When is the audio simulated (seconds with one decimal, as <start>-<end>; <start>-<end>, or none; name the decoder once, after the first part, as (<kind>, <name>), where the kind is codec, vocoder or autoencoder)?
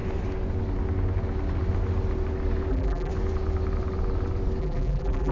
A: 2.7-3.1 (vocoder, BigVGAN v2); 4.6-5.3